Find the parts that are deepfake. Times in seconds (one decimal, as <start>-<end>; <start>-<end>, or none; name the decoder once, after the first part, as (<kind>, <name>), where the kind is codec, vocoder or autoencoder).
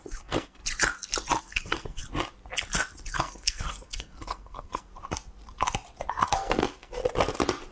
0.0-0.6 (codec, SNAC); 1.4-2.0; 3.1-4.9; 6.1-7.0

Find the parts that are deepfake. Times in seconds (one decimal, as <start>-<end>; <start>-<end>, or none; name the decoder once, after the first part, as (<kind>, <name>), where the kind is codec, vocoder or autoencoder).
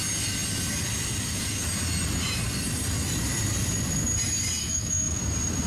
4.6-5.2 (autoencoder, DAC-VAE)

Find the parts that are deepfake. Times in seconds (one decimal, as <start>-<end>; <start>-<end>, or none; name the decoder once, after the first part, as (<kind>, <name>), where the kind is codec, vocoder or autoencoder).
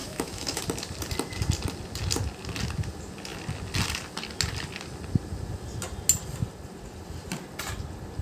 0.0-0.6 (autoencoder, DAC-VAE)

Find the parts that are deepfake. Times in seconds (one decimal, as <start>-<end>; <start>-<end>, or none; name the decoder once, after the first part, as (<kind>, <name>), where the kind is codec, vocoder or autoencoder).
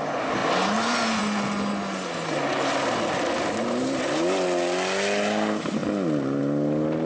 none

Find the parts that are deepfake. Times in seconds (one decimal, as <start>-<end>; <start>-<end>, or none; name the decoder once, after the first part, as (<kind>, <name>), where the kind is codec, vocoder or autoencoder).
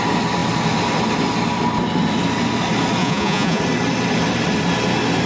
3.0-3.6 (vocoder, Vocos)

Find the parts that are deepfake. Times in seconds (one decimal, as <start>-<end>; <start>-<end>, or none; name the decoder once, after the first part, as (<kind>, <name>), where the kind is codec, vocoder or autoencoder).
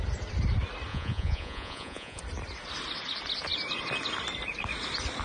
0.9-2.2 (vocoder, Vocos)